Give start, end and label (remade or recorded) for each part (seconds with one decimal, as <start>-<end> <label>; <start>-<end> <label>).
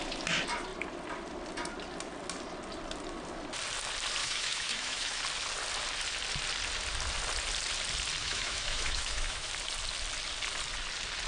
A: 0.0-4.2 recorded; 4.2-5.2 remade; 5.2-8.2 recorded; 8.2-9.5 remade; 9.5-11.3 recorded